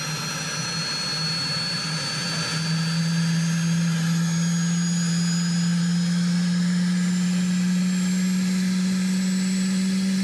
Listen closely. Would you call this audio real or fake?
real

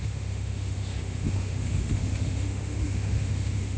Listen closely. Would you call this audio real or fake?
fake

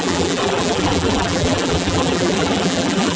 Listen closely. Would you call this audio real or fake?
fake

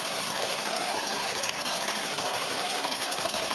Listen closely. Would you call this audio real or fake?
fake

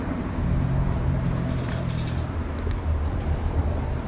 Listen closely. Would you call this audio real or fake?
fake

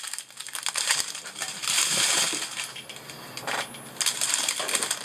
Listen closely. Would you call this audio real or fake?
real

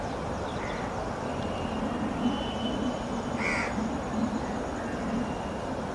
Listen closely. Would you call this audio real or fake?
real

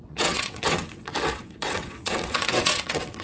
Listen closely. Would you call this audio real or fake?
fake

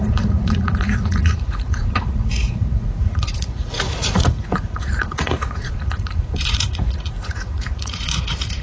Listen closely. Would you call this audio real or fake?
fake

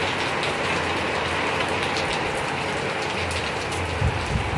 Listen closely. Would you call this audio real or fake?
real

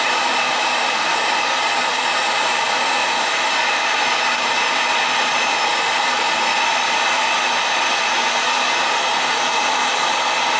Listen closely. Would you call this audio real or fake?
fake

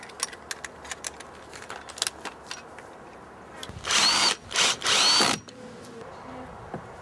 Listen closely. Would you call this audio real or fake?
real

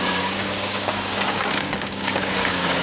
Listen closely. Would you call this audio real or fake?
fake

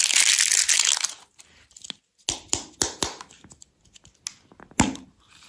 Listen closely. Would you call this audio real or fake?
real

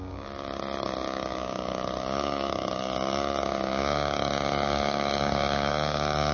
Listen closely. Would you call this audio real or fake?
fake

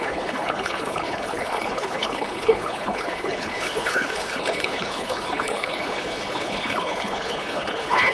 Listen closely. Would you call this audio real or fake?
fake